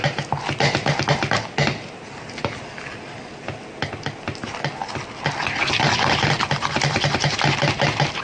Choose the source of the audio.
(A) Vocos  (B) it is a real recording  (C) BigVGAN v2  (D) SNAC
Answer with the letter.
B